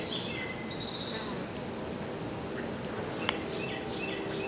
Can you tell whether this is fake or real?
real